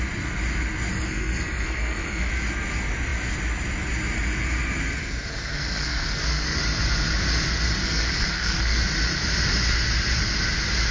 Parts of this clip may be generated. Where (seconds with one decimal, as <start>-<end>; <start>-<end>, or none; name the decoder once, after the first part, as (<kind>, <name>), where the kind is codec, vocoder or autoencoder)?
0.9-2.3 (codec, SNAC); 5.3-6.6; 7.8-8.8